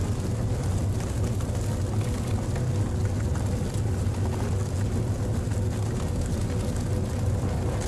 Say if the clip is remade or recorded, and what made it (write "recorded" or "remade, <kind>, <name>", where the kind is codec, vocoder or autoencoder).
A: recorded